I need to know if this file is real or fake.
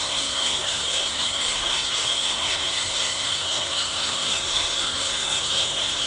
fake